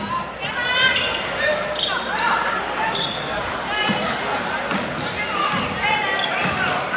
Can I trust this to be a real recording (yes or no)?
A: yes